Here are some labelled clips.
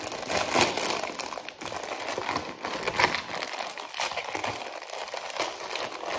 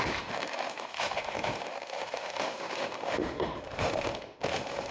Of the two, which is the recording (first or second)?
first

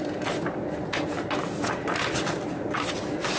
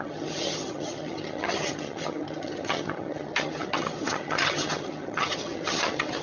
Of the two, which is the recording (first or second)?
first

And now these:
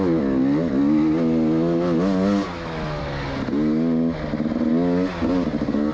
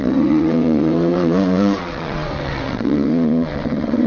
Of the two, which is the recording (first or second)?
first